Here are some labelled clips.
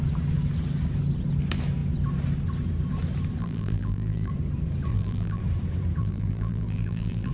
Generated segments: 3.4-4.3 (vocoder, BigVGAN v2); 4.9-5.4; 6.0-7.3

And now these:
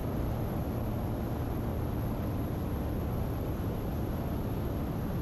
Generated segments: 0.0-0.6 (vocoder, BigVGAN v2); 1.7-3.6

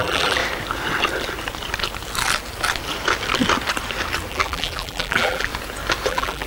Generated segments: 0.0-0.4 (vocoder, BigVGAN v2); 4.3-5.5; 6.1-6.5

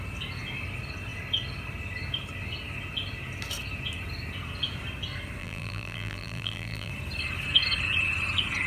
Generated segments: 5.4-6.9 (vocoder, BigVGAN v2)

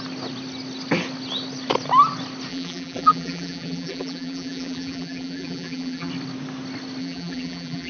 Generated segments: 2.5-6.1 (vocoder, BigVGAN v2); 7.0-7.9